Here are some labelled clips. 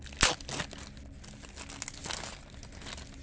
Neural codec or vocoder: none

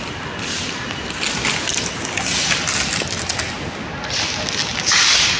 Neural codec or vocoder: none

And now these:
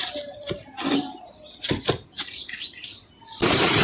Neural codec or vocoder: vocoder, BigVGAN v2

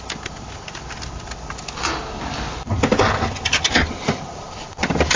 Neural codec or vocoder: none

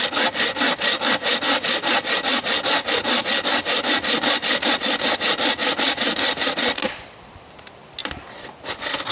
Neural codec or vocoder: none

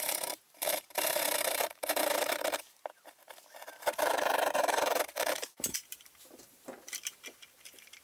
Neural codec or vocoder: vocoder, BigVGAN v2